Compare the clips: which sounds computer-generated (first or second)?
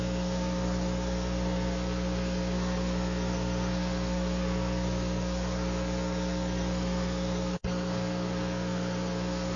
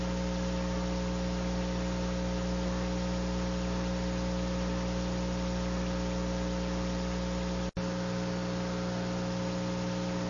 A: first